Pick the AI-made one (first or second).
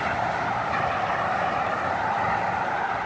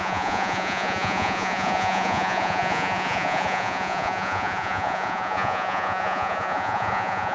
second